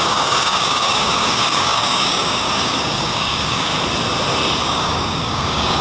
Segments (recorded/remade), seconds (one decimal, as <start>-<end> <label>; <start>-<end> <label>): 0.0-3.7 remade; 3.7-4.6 recorded; 4.6-5.8 remade